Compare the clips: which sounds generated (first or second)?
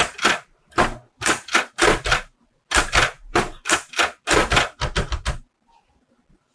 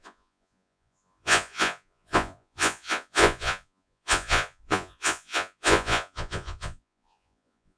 second